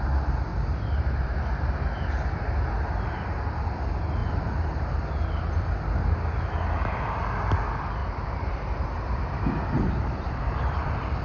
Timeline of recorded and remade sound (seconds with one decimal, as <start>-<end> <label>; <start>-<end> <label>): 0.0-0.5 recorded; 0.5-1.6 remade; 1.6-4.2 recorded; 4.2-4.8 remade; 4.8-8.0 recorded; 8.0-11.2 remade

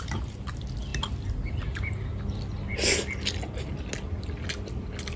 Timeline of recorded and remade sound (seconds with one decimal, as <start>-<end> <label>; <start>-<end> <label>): 0.0-5.2 recorded

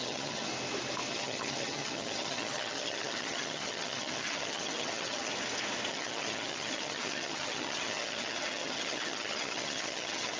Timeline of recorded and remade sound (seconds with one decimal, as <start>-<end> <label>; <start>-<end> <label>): 0.0-0.5 remade; 0.5-1.1 recorded; 1.1-5.3 remade; 5.3-5.9 recorded; 5.9-10.4 remade

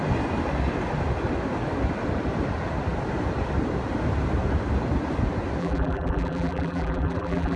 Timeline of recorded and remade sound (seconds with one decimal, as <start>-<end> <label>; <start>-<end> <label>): 0.0-5.6 recorded; 5.6-7.6 remade

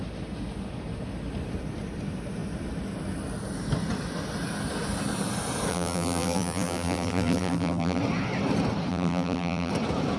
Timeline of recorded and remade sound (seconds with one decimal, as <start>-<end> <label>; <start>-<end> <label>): 0.0-5.7 recorded; 5.7-8.0 remade; 8.0-8.9 recorded; 8.9-9.7 remade; 9.7-10.2 recorded

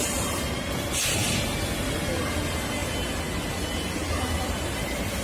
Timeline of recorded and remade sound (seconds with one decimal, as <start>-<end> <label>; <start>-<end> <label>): 0.0-5.2 recorded